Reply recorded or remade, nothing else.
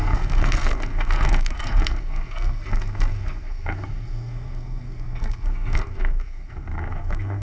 remade